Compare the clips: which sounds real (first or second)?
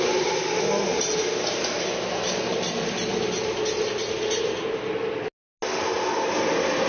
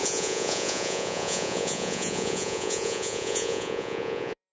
first